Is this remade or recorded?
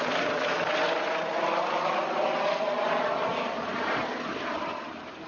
recorded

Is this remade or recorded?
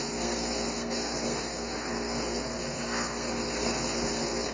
remade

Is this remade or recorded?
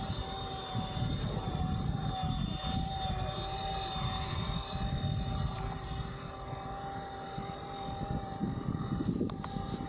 recorded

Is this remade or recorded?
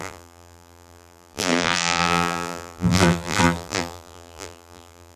remade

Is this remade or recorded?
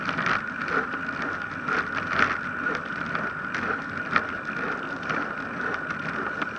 recorded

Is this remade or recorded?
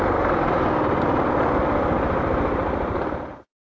recorded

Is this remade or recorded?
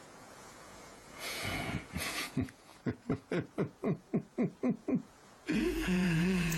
remade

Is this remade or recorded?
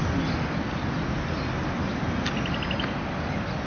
recorded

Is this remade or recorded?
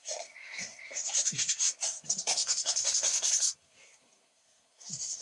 remade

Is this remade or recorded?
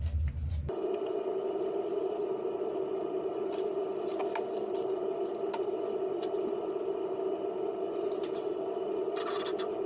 recorded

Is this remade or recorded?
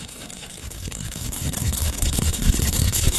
remade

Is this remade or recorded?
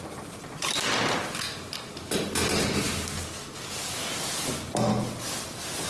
recorded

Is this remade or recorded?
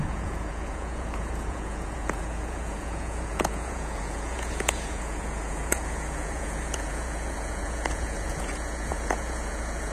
remade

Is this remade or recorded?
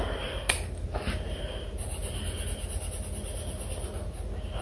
recorded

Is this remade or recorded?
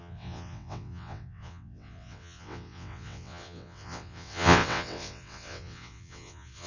remade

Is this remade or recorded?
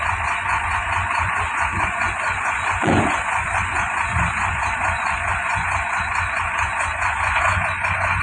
remade